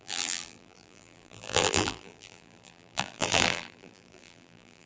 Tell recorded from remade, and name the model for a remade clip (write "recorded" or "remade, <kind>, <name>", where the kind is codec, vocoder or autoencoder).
remade, vocoder, BigVGAN v2